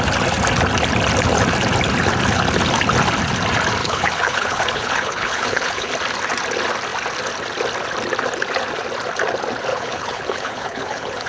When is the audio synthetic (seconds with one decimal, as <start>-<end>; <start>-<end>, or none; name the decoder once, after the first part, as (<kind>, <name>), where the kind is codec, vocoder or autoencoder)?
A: 3.8-5.9 (codec, HILCodec); 9.7-11.3